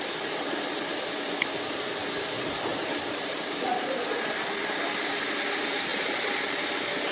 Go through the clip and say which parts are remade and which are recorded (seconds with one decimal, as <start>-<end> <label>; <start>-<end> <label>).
0.0-2.7 recorded; 2.7-4.0 remade; 4.0-5.9 recorded; 5.9-6.6 remade; 6.6-7.1 recorded